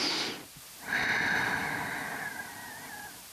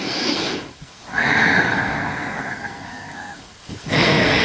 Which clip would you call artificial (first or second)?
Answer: second